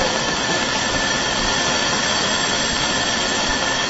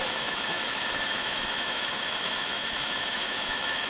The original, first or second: first